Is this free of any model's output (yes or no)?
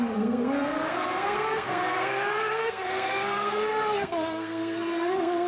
no